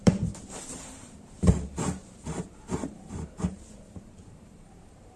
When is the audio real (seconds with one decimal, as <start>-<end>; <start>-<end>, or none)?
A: 1.5-2.0